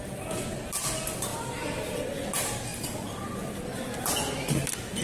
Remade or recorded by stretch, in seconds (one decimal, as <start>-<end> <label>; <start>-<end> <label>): 0.0-1.3 recorded; 1.3-2.3 remade; 2.3-2.7 recorded; 2.7-3.5 remade; 3.5-5.0 recorded